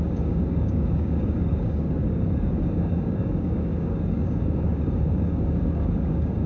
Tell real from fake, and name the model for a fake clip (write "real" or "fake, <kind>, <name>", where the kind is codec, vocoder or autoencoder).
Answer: fake, codec, DAC